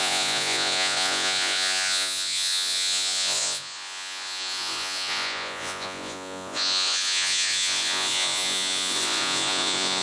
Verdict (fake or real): fake